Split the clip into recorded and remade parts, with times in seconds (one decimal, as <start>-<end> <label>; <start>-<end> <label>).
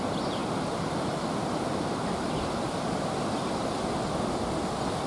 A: 0.0-5.1 recorded